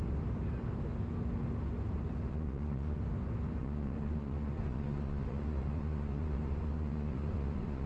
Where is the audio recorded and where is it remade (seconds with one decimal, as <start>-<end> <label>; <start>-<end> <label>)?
0.0-2.3 recorded; 2.3-3.0 remade; 3.0-3.6 recorded; 3.6-7.9 remade